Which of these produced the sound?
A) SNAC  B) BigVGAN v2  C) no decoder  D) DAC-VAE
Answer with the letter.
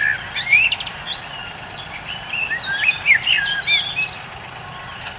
C